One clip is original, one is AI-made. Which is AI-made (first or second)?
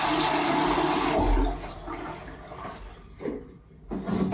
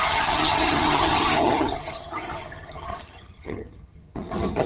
second